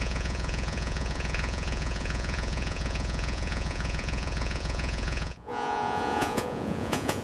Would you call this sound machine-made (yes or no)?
yes